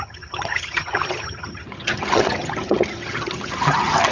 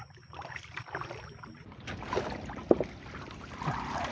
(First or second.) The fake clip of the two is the first